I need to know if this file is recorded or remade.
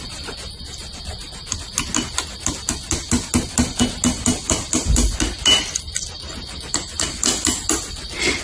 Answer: recorded